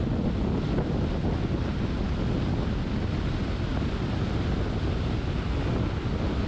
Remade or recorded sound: recorded